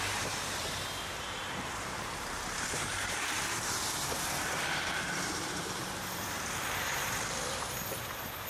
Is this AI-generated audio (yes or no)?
yes